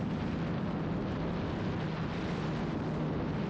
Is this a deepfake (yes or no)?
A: no